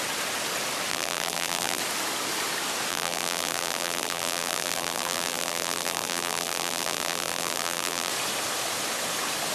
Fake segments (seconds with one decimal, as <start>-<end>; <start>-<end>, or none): 0.9-1.8; 2.9-8.1